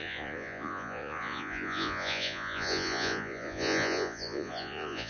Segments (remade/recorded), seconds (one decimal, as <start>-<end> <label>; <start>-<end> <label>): 0.0-5.1 remade